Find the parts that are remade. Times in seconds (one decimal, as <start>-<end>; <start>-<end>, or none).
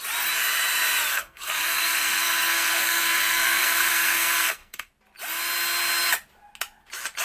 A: 1.1-4.9